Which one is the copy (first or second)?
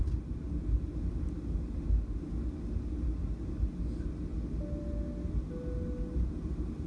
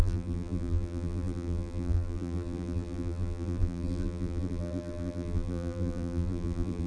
second